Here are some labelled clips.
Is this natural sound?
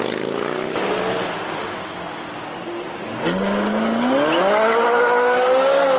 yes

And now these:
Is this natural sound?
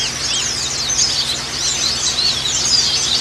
yes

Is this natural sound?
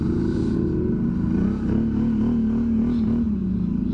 yes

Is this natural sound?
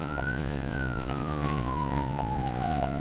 no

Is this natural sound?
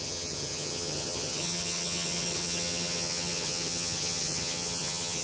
no